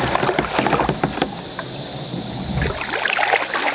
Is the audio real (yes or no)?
yes